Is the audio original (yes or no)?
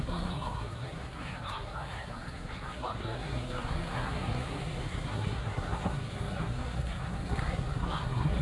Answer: no